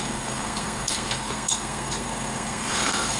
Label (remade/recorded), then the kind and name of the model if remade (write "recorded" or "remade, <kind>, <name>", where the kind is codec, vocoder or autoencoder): remade, codec, SNAC